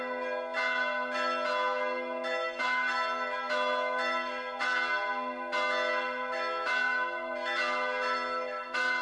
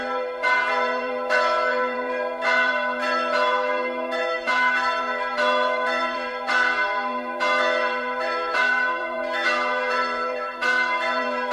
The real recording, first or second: first